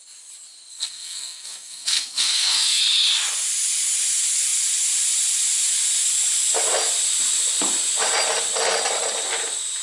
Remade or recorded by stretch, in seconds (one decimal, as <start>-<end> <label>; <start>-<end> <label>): 0.0-0.7 recorded; 0.7-2.8 remade; 2.8-9.8 recorded